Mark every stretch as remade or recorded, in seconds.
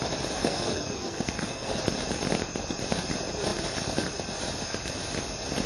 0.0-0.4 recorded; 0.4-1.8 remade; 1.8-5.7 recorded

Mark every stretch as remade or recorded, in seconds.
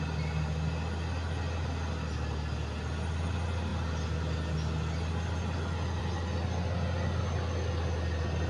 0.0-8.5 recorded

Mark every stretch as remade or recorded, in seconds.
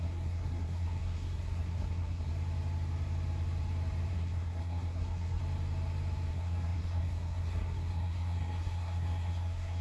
0.0-2.3 remade; 2.3-4.1 recorded; 4.1-5.4 remade; 5.4-6.3 recorded; 6.3-9.8 remade